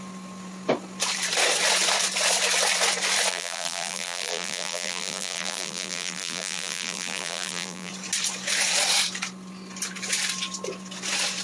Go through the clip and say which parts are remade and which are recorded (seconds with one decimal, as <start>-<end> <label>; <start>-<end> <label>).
0.0-3.3 recorded; 3.3-7.9 remade; 7.9-11.4 recorded